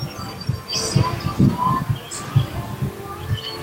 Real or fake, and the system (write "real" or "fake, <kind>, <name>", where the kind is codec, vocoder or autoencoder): real